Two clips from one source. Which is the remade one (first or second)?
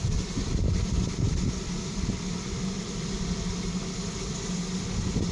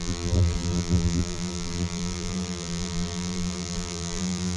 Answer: second